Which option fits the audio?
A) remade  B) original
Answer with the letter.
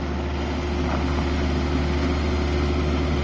B